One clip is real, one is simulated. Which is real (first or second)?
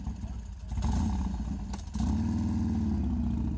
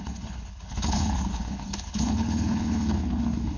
first